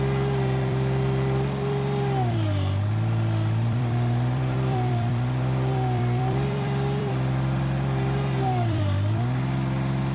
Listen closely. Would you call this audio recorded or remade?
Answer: remade